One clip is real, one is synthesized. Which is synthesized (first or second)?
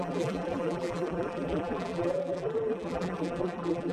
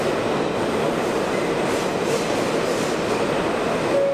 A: first